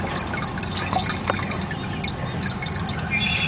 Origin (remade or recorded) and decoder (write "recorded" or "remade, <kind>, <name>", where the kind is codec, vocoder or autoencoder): recorded